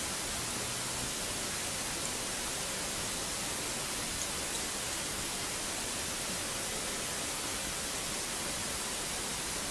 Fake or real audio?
real